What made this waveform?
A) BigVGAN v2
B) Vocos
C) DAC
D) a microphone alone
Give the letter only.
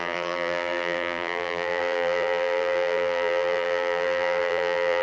A